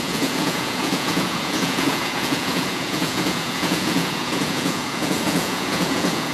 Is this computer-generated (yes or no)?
yes